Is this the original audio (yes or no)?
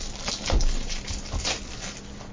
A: yes